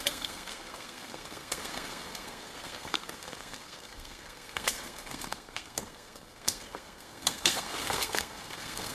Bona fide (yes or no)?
no